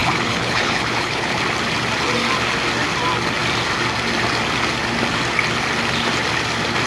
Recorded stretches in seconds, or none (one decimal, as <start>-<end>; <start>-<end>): 1.4-6.9